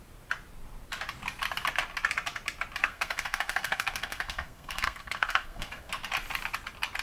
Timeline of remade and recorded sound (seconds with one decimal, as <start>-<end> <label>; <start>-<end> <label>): 0.0-2.8 recorded; 2.8-5.9 remade; 5.9-7.0 recorded